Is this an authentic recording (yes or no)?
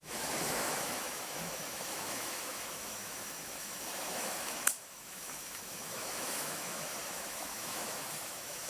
no